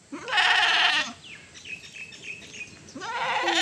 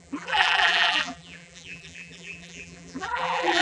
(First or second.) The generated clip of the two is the second